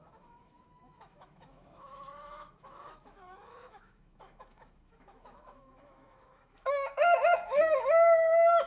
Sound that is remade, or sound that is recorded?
remade